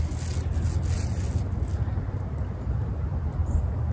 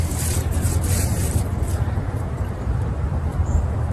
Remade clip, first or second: second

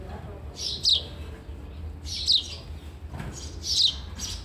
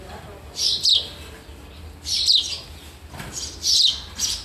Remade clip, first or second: second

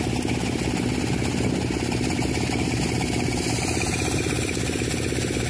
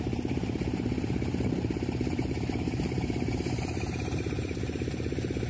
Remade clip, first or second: second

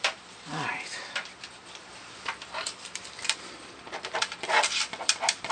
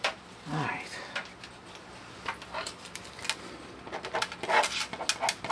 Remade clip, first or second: first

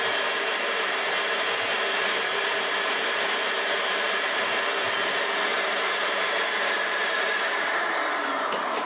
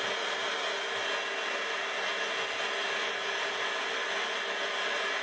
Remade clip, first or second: first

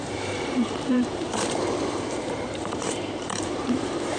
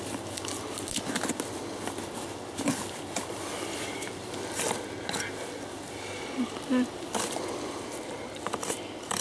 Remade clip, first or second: first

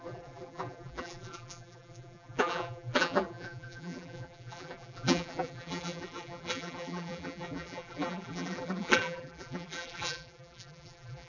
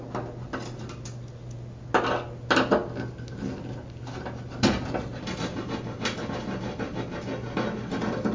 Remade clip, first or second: first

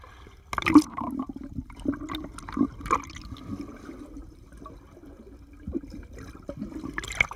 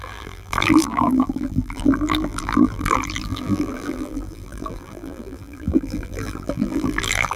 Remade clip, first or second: second